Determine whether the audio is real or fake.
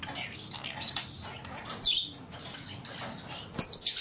real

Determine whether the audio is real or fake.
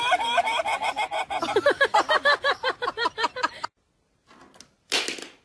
real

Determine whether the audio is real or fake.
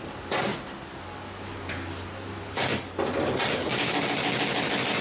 real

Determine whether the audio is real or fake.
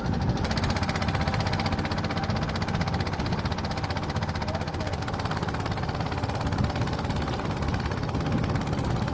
real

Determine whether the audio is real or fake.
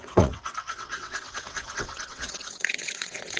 fake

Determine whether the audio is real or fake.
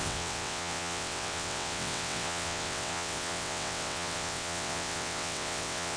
fake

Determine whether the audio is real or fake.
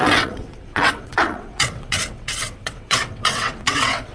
fake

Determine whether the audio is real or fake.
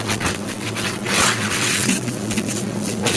fake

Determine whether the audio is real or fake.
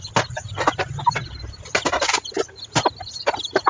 real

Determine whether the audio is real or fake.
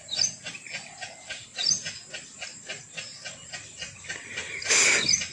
real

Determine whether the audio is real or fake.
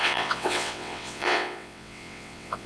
fake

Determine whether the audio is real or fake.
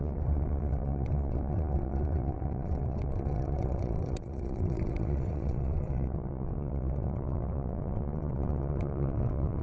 fake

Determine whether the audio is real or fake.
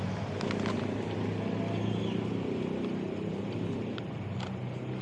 real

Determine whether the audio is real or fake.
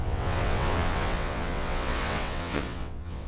fake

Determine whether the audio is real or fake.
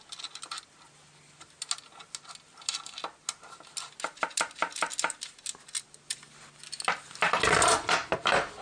real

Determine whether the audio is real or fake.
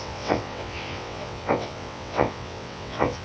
fake